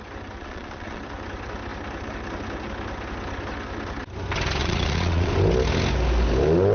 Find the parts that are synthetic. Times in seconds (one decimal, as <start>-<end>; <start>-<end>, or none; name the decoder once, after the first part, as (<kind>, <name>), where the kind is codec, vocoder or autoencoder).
0.4-1.0 (vocoder, Vocos); 4.6-5.3